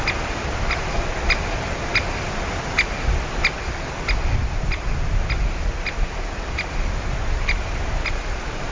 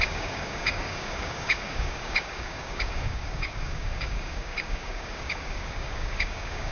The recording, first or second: first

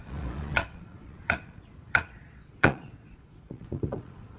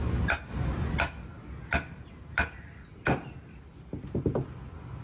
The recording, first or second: second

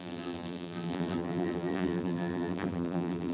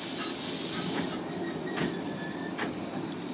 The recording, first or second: second